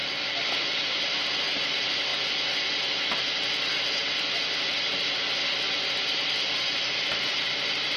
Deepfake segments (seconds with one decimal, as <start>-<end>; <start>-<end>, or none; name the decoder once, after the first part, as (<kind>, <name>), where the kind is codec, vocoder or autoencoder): none